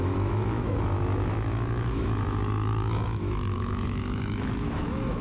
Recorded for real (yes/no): no